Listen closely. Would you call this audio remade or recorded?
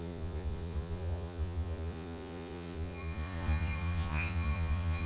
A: remade